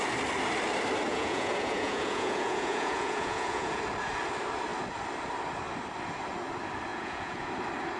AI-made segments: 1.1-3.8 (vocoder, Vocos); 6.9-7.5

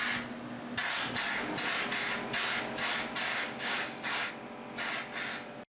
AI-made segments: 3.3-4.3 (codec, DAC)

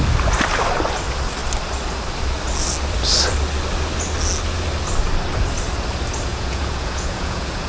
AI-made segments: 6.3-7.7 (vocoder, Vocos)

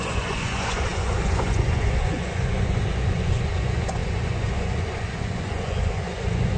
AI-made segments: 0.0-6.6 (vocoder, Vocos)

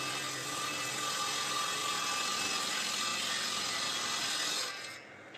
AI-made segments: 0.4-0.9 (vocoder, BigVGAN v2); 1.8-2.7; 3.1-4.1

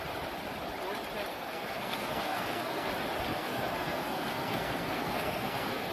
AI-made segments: 1.3-2.9 (codec, SNAC); 3.3-5.9

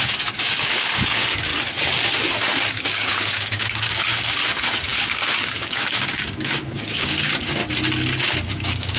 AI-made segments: 0.0-1.5 (codec, DAC); 2.7-7.6; 8.5-9.0

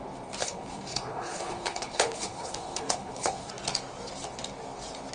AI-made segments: 0.4-3.5 (codec, HILCodec)